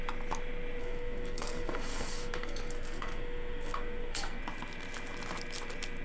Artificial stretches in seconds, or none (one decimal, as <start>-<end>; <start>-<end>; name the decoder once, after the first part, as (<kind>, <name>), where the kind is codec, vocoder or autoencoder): 0.8-4.4 (codec, SNAC)